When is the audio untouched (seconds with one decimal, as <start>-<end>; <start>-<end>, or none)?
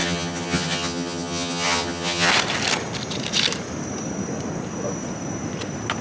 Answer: 2.3-6.0